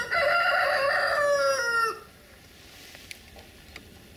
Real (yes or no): yes